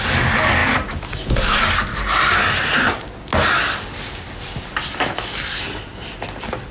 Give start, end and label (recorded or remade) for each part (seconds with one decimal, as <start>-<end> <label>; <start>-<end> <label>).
0.0-6.7 recorded